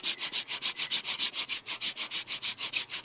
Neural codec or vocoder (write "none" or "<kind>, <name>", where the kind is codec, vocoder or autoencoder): vocoder, Vocos